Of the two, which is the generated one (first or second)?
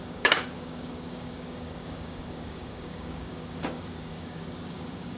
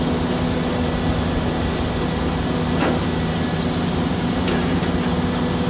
first